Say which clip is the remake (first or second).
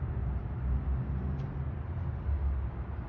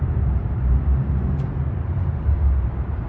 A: second